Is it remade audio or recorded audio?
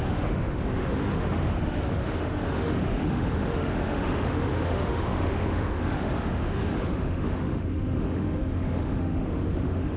remade